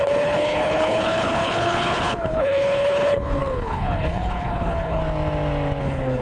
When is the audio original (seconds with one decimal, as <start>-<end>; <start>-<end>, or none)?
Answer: 5.0-5.8